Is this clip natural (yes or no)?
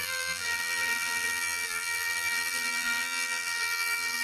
no